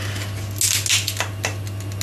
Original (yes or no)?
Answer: yes